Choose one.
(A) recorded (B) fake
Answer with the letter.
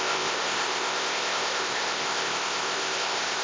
B